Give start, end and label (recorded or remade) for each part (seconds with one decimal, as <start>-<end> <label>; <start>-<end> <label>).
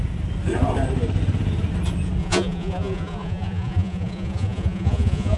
0.0-2.2 recorded; 2.2-5.4 remade